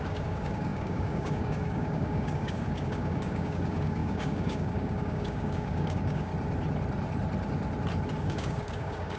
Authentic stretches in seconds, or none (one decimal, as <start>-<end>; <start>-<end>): 6.3-8.2